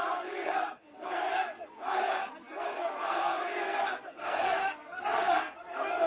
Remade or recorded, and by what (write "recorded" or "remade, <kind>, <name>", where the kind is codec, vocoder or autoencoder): remade, codec, SNAC